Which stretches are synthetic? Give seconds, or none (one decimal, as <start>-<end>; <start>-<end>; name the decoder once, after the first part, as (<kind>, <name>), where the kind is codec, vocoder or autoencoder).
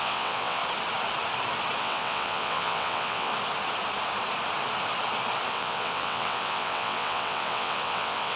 0.0-0.6 (vocoder, WaveNeXt); 1.8-3.3; 5.5-8.4